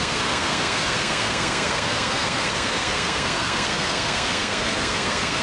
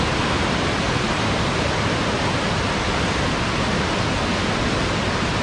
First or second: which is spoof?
first